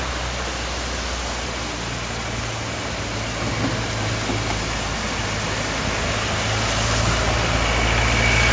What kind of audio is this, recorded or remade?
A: recorded